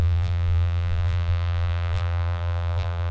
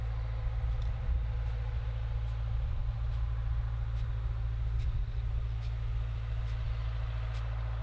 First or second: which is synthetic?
first